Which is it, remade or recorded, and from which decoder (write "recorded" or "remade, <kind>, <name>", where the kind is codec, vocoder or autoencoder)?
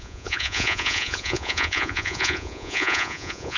remade, vocoder, Vocos